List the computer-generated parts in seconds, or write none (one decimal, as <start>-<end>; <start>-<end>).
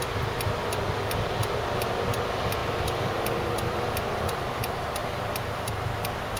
2.6-4.6; 5.0-5.7